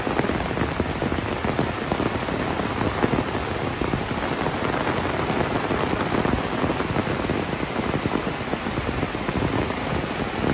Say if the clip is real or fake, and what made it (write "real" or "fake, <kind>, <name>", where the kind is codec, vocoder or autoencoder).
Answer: real